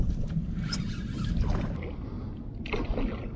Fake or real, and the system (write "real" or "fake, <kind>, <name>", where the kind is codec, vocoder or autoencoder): real